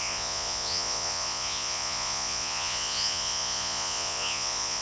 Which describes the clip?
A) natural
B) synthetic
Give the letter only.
B